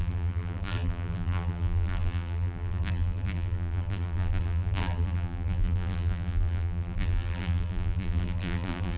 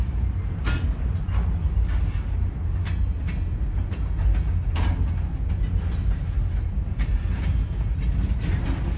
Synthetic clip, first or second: first